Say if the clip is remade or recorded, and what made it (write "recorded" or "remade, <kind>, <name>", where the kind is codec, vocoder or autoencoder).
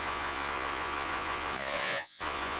remade, vocoder, Vocos